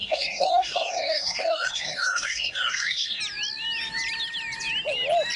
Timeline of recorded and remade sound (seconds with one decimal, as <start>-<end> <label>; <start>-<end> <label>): 0.0-3.2 remade; 3.2-5.4 recorded